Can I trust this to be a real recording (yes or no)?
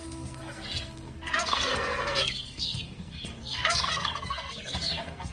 no